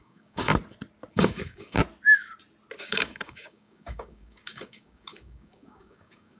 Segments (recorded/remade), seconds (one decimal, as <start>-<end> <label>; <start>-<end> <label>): 0.0-0.5 remade; 0.5-1.1 recorded; 1.1-1.8 remade; 1.8-2.8 recorded; 2.8-6.4 remade